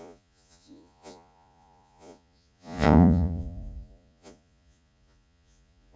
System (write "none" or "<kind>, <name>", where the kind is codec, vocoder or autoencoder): vocoder, Vocos